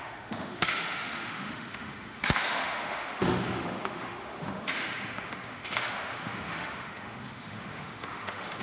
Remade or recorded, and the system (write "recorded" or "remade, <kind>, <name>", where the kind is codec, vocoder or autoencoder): remade, autoencoder, DAC-VAE